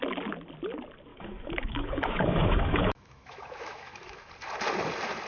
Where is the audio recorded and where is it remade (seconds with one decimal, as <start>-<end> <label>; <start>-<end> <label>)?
0.0-1.1 recorded; 1.1-4.3 remade; 4.3-5.3 recorded